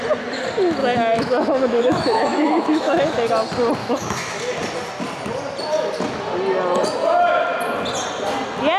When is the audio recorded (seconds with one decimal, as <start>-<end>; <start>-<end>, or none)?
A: 0.0-0.8; 3.3-3.8; 4.4-8.8